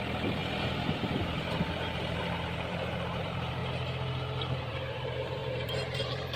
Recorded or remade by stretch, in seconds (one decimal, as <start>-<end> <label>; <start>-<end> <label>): 0.0-3.6 remade; 3.6-4.6 recorded; 4.6-6.4 remade